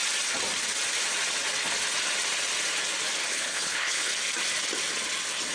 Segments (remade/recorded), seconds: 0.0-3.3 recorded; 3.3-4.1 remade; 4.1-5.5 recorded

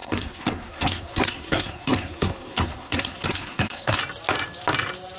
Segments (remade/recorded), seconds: 0.0-4.0 remade; 4.0-5.2 recorded

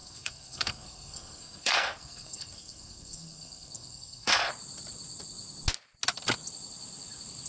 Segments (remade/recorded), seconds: 0.0-4.5 remade; 4.5-7.5 recorded

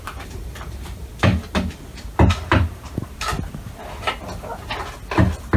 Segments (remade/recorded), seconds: 0.0-1.3 remade; 1.3-2.3 recorded; 2.3-3.3 remade; 3.3-5.6 recorded

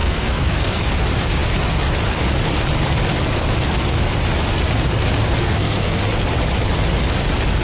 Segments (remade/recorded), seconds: 0.0-0.8 remade; 0.8-5.4 recorded; 5.4-6.0 remade; 6.0-7.6 recorded

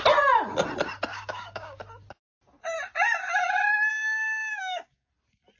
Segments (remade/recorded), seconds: 0.0-1.1 recorded; 1.1-1.8 remade; 1.8-3.9 recorded; 3.9-5.1 remade; 5.1-5.6 recorded